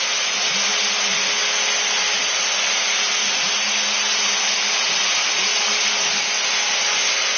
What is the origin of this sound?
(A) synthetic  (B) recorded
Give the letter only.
B